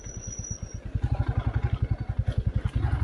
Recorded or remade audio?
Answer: recorded